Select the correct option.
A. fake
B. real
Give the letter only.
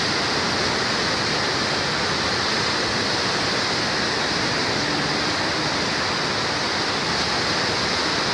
B